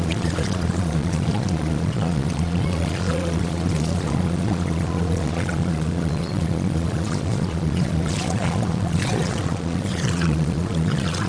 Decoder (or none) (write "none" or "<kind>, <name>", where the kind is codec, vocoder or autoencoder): vocoder, Vocos